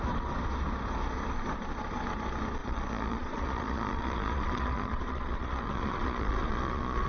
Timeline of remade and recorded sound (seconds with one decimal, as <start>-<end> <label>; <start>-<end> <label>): 0.0-2.6 recorded; 2.6-7.1 remade